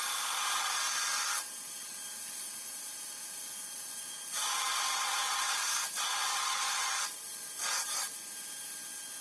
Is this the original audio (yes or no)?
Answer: yes